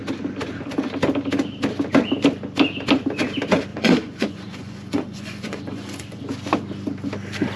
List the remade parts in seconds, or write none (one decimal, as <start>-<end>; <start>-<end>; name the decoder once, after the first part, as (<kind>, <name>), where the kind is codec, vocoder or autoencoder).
3.7-6.2 (vocoder, Vocos)